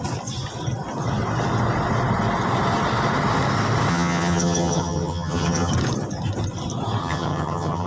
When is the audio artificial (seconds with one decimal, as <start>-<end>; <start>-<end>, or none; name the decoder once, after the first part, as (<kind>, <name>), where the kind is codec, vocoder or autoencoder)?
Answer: 3.9-5.7 (vocoder, HiFi-GAN); 7.0-7.9